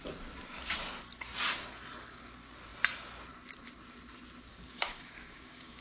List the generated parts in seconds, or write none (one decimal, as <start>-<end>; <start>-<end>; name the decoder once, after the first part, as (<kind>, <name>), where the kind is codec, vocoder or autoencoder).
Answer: 4.5-5.8 (codec, DAC)

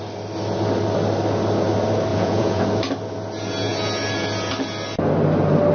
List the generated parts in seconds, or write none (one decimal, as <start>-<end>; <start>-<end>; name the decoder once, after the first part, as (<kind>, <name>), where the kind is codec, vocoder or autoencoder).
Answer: 2.1-2.6 (vocoder, Vocos)